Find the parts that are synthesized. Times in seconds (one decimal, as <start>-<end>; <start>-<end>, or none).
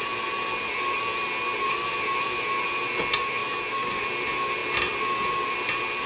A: none